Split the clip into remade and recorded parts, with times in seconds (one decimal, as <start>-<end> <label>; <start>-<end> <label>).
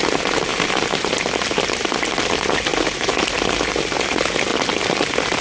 0.0-0.5 recorded; 0.5-1.1 remade; 1.1-2.7 recorded; 2.7-3.3 remade; 3.3-5.4 recorded